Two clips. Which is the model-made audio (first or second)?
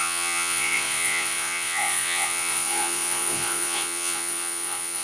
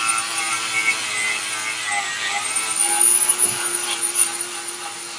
first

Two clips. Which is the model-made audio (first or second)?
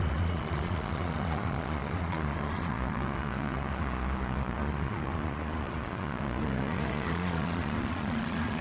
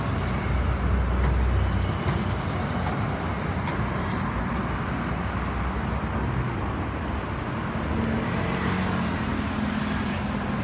first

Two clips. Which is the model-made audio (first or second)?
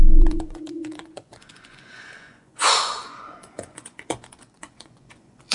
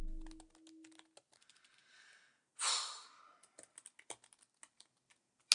first